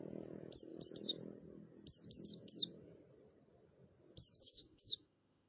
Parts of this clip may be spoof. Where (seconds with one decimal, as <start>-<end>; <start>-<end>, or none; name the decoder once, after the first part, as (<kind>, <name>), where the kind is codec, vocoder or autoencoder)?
4.4-5.5 (autoencoder, DAC-VAE)